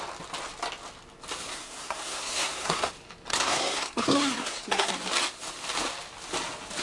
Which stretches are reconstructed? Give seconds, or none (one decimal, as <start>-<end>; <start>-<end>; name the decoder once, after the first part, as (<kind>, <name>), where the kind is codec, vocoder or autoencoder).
1.5-2.9 (codec, SNAC); 3.3-4.9